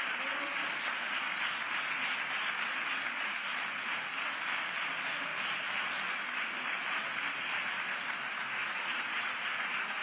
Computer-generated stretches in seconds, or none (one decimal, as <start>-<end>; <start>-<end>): 8.7-10.0